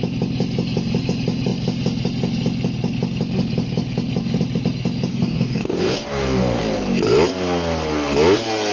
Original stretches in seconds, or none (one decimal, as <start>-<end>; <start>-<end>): 0.0-5.1; 6.6-8.7